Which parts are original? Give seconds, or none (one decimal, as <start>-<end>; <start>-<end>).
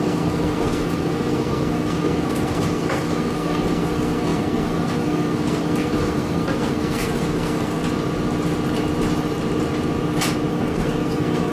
7.8-10.5